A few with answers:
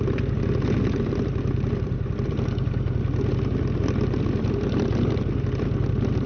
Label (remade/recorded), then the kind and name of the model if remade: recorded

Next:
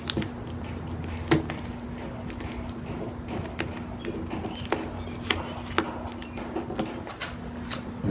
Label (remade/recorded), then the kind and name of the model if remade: recorded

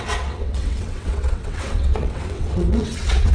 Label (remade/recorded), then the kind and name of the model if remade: remade, vocoder, WaveNeXt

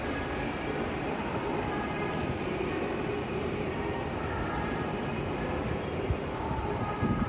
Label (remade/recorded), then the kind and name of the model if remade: remade, vocoder, BigVGAN v2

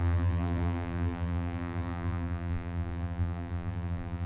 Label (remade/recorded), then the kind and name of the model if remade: remade, vocoder, BigVGAN v2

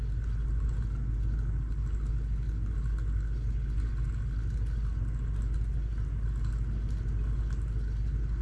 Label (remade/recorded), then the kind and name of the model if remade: recorded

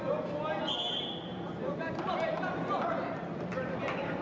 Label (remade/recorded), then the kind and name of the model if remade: recorded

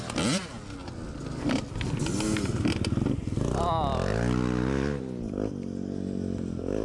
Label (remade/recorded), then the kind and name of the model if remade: recorded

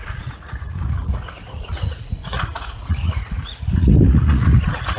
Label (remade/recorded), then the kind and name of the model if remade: remade, vocoder, Vocos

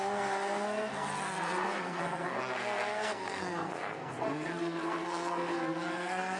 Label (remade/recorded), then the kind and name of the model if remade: remade, codec, SNAC